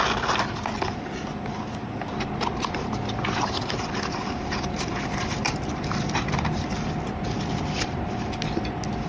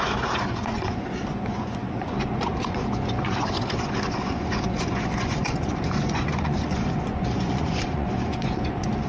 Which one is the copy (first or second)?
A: second